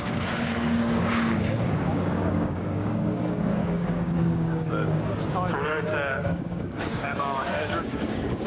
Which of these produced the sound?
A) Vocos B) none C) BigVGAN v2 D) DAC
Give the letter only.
D